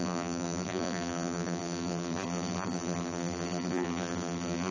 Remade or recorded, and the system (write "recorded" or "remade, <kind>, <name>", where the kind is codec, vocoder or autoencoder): remade, vocoder, BigVGAN v2